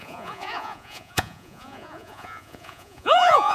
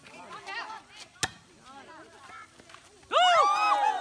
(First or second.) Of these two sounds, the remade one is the first